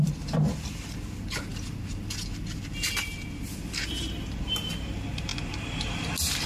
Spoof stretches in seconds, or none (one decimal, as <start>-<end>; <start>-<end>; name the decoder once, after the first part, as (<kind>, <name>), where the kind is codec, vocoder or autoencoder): none